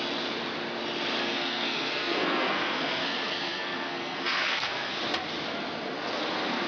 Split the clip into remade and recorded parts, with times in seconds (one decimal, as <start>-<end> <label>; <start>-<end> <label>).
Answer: 0.0-1.2 recorded; 1.2-4.9 remade; 4.9-6.7 recorded